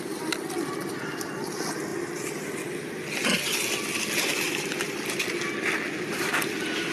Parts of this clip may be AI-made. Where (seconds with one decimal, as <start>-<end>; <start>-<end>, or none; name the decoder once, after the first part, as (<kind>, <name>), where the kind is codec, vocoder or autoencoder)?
none